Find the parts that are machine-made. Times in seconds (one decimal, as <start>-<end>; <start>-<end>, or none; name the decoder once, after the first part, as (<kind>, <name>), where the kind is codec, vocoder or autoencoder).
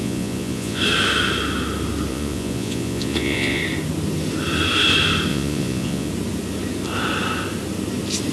0.0-0.8 (vocoder, Vocos); 2.1-3.6; 5.3-6.1